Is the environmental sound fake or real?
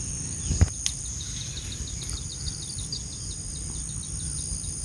real